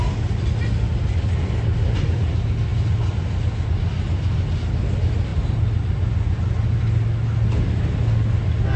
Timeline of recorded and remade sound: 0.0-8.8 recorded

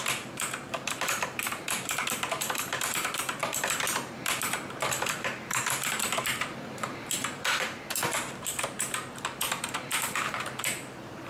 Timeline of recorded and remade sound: 0.0-11.3 remade

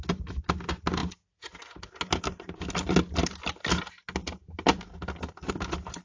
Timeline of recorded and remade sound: 0.0-6.0 recorded

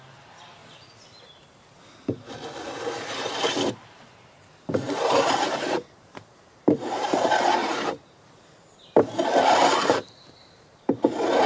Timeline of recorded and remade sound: 0.0-0.6 remade; 0.6-3.7 recorded; 3.7-11.5 remade

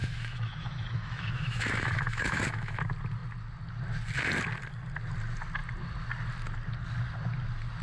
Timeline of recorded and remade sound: 0.0-2.8 remade; 2.8-7.8 recorded

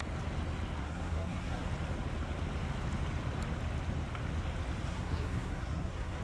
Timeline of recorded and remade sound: 0.0-0.8 recorded; 0.8-1.7 remade; 1.7-4.9 recorded; 4.9-6.2 remade

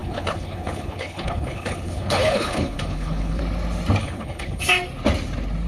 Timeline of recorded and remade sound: 0.0-3.4 remade; 3.4-4.0 recorded; 4.0-4.6 remade; 4.6-5.7 recorded